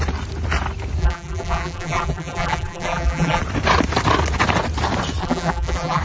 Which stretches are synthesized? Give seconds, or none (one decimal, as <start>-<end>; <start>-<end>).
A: 1.0-3.4; 5.2-6.0